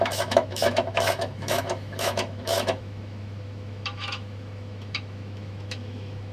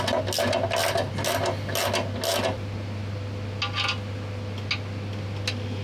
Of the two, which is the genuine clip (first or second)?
second